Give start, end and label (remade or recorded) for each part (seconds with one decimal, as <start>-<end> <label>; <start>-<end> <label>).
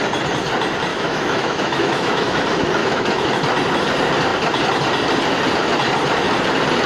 0.0-0.9 recorded; 0.9-2.4 remade; 2.4-2.8 recorded; 2.8-3.3 remade; 3.3-6.9 recorded